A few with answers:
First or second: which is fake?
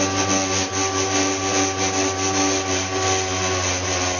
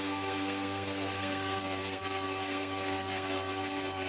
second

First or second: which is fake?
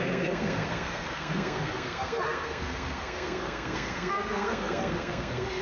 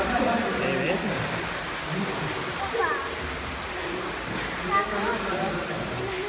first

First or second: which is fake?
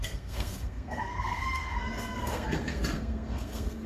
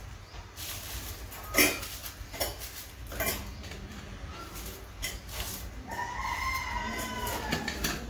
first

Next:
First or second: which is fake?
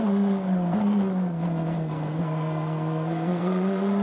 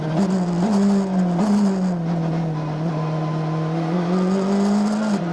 first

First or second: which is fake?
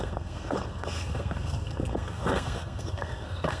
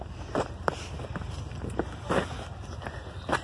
first